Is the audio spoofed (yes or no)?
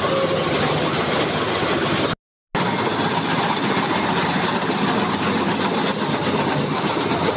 no